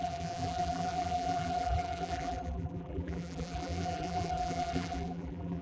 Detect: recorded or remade remade